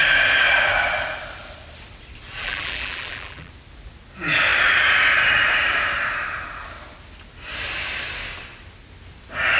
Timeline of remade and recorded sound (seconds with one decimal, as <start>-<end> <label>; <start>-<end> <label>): 0.0-2.4 recorded; 2.4-3.5 remade; 3.5-9.6 recorded